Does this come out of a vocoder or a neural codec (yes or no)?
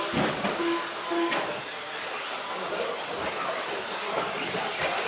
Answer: no